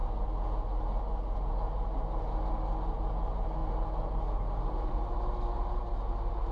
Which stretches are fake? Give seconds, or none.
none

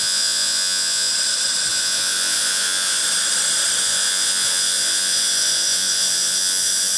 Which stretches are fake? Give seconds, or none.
0.0-1.1 (vocoder, Vocos); 1.7-3.0; 3.8-7.0